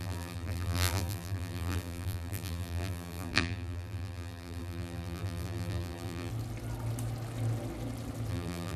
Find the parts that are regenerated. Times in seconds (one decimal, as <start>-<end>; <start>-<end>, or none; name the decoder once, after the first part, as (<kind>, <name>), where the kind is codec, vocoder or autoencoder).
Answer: 0.0-6.3 (vocoder, BigVGAN v2); 8.3-8.8